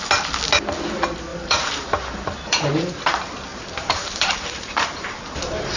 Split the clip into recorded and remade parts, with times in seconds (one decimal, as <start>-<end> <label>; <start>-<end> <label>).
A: 0.0-1.3 recorded; 1.3-2.7 remade; 2.7-3.5 recorded; 3.5-5.8 remade